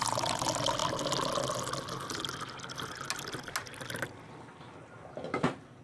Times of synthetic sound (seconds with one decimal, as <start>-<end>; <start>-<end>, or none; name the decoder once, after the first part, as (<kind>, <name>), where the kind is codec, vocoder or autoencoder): none